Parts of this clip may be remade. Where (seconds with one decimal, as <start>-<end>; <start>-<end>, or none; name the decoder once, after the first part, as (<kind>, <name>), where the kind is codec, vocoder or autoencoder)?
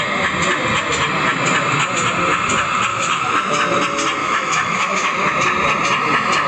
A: 2.9-3.7 (autoencoder, DAC-VAE); 4.2-5.3